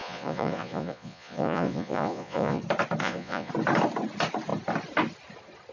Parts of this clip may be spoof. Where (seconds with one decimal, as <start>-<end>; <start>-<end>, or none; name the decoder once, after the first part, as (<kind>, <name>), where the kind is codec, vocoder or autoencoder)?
0.0-2.6 (vocoder, Vocos); 3.0-3.5